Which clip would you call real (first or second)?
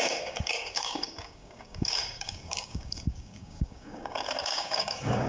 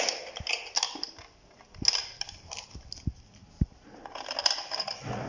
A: second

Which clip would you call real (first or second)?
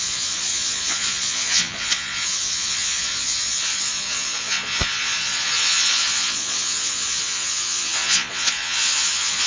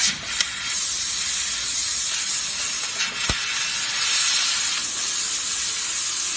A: second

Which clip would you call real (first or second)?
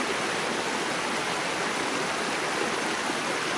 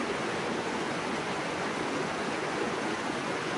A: first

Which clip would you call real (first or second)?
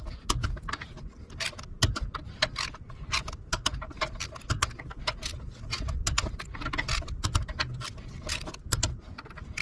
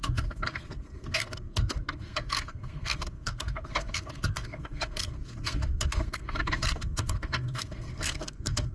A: first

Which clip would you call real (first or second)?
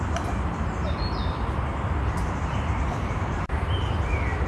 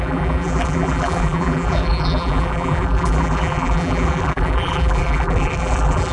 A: first